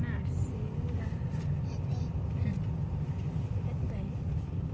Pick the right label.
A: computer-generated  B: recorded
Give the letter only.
B